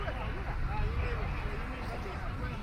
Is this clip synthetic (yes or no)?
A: no